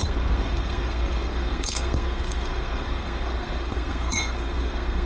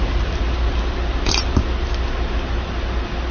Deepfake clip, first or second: first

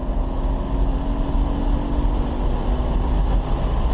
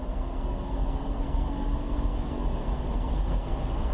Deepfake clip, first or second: second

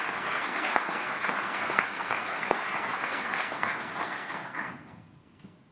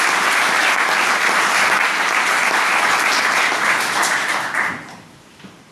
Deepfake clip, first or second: first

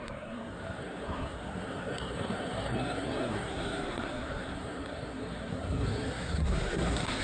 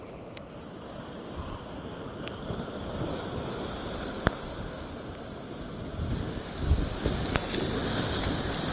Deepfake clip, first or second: first